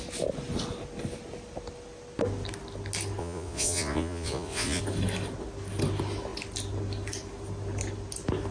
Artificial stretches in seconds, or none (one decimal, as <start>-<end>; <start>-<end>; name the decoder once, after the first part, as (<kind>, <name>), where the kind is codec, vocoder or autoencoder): 3.2-4.8 (vocoder, Vocos)